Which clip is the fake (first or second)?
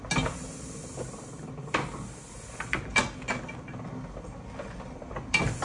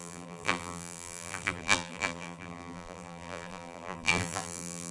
second